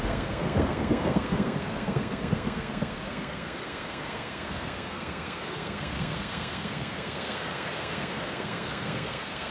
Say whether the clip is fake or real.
fake